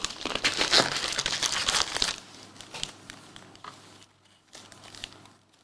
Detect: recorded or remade recorded